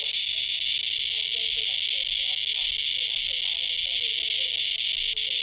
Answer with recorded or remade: recorded